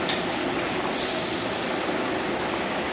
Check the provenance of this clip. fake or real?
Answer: real